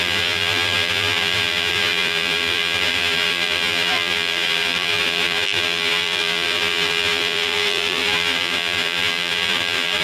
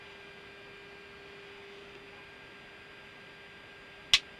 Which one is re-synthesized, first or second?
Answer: first